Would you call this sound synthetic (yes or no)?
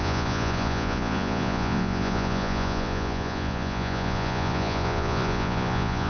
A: yes